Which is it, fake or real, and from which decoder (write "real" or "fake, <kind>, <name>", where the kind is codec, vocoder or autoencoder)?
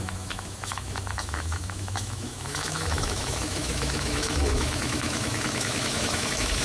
fake, autoencoder, DAC-VAE